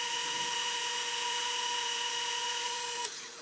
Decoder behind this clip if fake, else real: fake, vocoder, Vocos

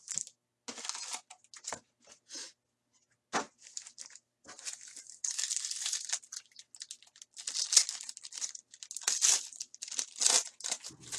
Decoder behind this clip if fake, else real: real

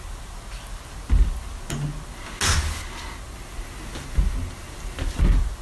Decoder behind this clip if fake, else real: real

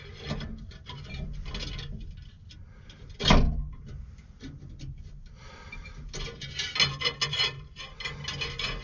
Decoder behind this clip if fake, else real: real